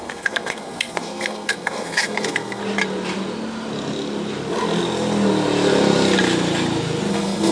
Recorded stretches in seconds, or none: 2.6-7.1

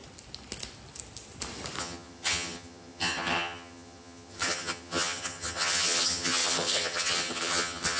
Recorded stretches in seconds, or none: 0.0-1.8

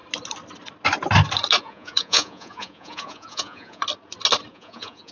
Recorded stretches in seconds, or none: 0.0-1.6; 3.8-4.5

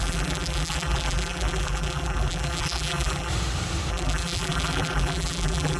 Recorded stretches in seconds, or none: 3.3-3.9

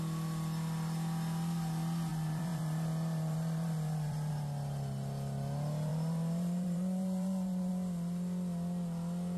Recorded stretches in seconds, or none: 0.0-2.1; 4.3-5.9; 7.7-9.4

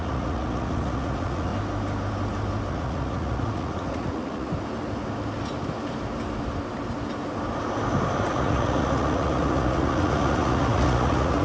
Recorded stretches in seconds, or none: 1.5-2.7; 4.5-8.3

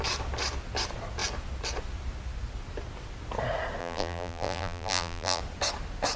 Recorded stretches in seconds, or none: 0.0-3.8; 5.4-6.2